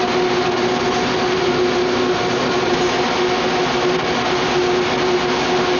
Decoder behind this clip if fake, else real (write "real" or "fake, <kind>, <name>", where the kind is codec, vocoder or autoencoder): real